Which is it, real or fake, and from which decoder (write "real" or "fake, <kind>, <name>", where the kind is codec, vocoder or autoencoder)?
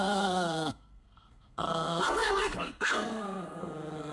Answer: fake, codec, SNAC